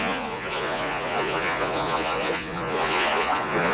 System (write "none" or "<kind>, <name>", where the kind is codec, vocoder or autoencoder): vocoder, Vocos